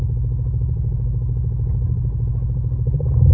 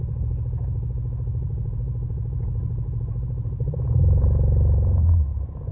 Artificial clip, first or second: second